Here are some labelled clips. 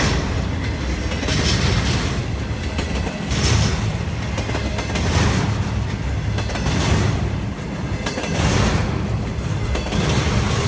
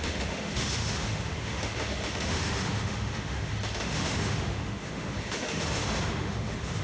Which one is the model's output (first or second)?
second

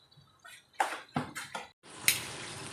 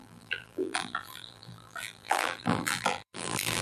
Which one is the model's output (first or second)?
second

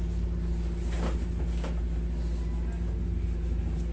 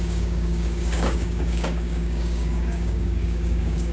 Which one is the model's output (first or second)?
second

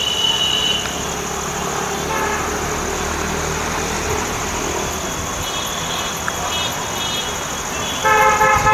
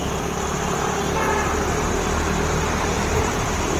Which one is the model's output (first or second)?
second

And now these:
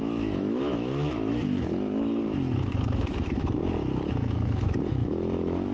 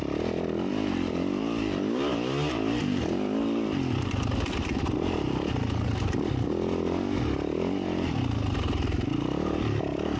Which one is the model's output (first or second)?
first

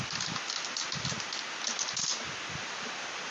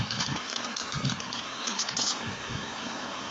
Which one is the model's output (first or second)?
second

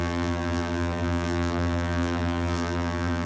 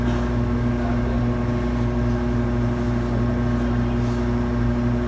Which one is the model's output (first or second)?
first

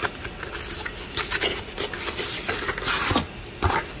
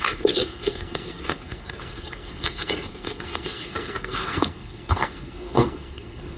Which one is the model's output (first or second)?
second